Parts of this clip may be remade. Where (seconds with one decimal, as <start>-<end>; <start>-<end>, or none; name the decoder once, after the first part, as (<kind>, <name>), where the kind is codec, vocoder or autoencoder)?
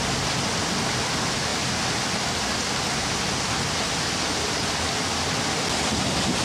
none